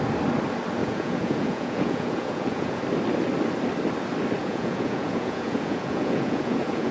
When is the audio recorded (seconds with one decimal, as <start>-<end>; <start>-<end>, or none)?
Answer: 0.0-0.8; 2.8-4.4